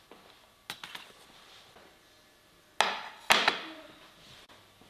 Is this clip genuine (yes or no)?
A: yes